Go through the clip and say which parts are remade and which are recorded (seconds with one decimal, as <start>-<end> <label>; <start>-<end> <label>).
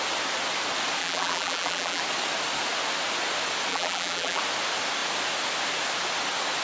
0.0-1.0 recorded; 1.0-2.0 remade; 2.0-3.7 recorded; 3.7-4.4 remade; 4.4-6.6 recorded